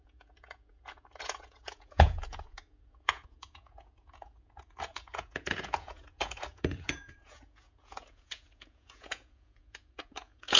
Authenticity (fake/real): fake